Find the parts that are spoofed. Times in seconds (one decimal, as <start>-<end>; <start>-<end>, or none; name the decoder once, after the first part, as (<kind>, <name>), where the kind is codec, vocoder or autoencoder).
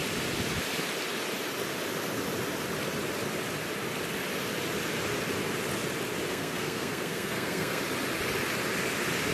6.3-7.8 (codec, SNAC)